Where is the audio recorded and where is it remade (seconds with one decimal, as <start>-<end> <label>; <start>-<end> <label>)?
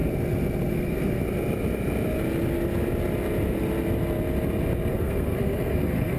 0.0-0.7 recorded; 0.7-1.2 remade; 1.2-4.9 recorded; 4.9-6.2 remade